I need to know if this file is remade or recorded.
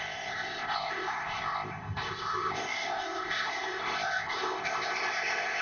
remade